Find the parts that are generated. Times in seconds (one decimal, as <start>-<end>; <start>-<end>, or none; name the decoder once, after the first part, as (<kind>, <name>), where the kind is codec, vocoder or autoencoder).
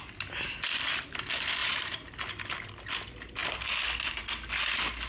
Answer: 1.6-2.2 (vocoder, BigVGAN v2); 3.4-4.2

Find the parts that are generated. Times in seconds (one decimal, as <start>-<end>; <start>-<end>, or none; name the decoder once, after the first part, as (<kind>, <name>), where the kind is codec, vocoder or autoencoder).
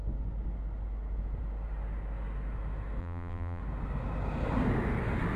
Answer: 3.0-3.6 (vocoder, BigVGAN v2)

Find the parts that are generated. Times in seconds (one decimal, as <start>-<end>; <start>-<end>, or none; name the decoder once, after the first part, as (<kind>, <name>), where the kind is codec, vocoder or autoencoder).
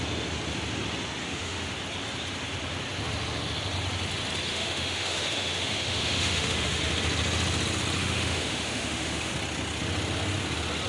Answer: 1.2-1.7 (autoencoder, DAC-VAE); 4.5-6.8; 8.0-9.3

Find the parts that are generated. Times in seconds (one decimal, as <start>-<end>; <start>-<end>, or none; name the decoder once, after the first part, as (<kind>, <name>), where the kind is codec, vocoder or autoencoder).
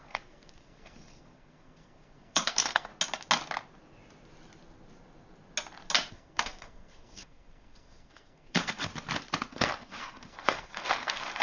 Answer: 0.0-2.9 (codec, SNAC); 6.1-8.9; 9.5-11.4